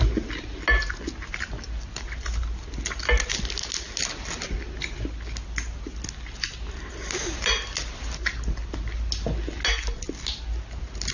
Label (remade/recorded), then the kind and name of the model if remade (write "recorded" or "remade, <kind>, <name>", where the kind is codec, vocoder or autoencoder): recorded